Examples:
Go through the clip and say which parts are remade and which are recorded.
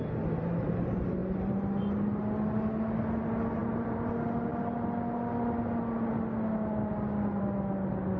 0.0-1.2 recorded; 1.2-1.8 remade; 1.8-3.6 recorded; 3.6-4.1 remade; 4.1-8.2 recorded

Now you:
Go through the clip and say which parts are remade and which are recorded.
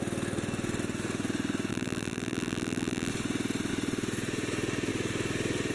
0.0-1.7 recorded; 1.7-3.1 remade; 3.1-5.7 recorded